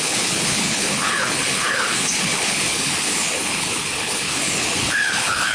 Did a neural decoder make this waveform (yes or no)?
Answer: yes